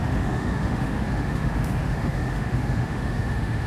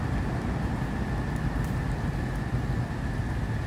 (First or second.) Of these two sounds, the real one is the second